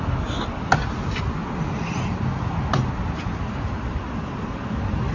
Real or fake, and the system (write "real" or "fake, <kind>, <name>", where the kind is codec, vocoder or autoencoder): real